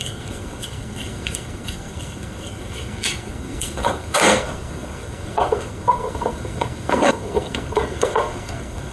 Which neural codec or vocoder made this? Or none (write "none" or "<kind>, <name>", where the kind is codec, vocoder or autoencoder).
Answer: codec, SNAC